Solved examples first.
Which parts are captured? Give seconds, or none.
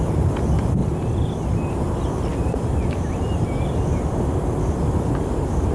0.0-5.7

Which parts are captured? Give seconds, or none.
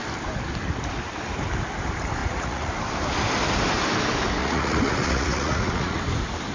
0.0-2.2; 2.7-4.4; 6.0-6.5